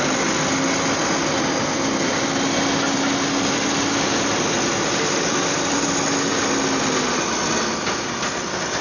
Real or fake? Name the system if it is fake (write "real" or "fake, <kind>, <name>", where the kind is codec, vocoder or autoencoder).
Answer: real